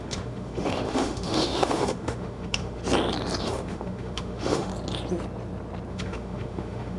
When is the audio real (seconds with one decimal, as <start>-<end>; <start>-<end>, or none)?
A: 2.8-3.4; 4.7-5.9